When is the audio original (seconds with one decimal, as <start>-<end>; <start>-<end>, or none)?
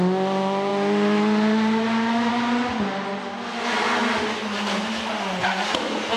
0.0-6.2